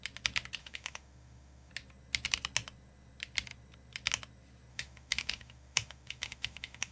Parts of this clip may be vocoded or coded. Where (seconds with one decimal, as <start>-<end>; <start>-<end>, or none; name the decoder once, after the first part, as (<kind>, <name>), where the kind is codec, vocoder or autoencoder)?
0.6-1.7 (autoencoder, DAC-VAE); 4.7-6.9